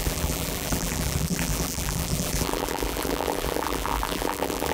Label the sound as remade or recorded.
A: remade